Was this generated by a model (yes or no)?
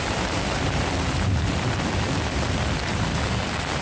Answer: no